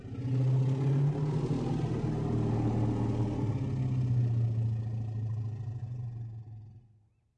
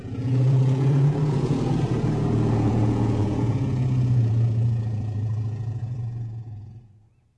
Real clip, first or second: first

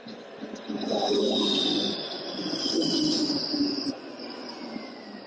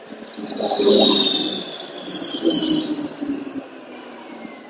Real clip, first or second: second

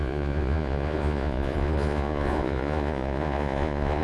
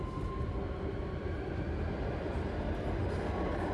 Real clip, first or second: second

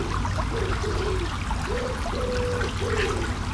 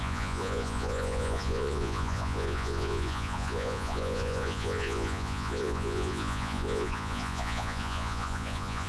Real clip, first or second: first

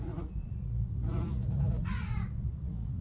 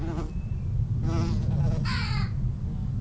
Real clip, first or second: second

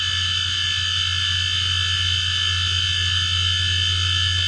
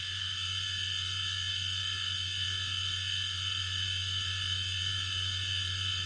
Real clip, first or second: first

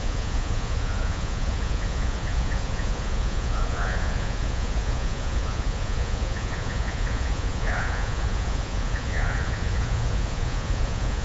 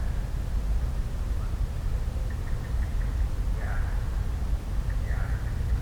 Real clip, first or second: second